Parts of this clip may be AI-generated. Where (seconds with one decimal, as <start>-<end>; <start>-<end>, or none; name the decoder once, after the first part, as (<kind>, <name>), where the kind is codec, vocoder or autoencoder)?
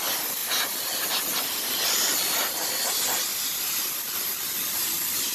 3.3-4.0 (vocoder, BigVGAN v2)